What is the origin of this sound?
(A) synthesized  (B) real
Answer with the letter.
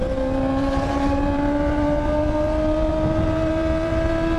A